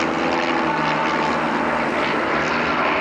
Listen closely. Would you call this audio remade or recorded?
recorded